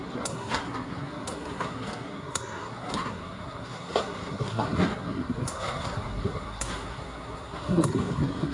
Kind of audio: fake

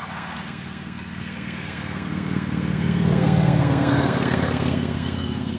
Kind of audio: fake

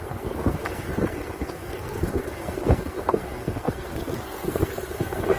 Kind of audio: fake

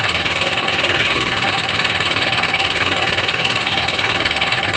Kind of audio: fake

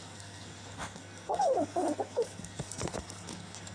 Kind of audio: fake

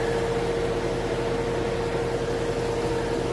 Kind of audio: real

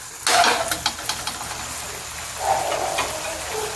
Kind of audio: real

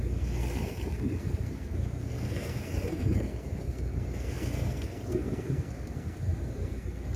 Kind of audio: fake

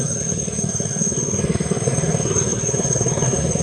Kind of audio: fake